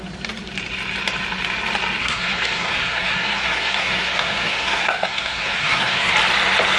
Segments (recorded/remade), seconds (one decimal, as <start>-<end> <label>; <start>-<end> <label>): 0.0-2.0 recorded; 2.0-6.1 remade; 6.1-6.8 recorded